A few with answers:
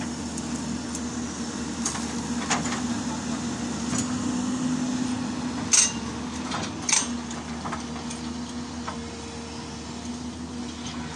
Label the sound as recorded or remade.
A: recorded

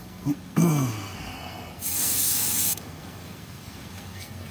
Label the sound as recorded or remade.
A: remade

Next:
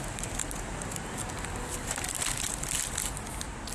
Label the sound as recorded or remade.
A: recorded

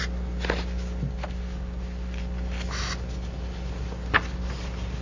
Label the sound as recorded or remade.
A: recorded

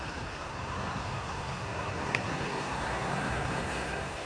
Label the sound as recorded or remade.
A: remade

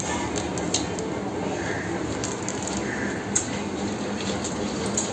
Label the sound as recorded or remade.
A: recorded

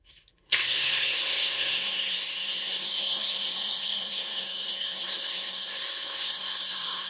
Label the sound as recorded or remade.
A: remade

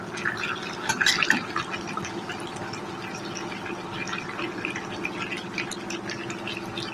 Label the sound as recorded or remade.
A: recorded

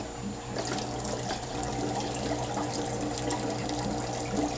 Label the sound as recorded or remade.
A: recorded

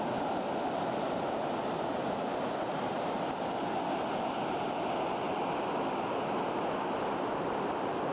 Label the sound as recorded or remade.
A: recorded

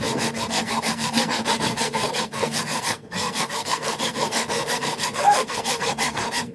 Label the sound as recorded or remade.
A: remade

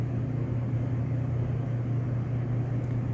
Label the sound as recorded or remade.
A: recorded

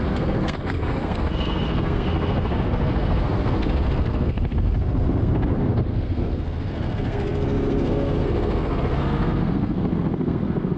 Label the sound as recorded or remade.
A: remade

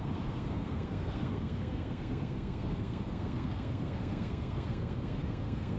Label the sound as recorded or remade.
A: remade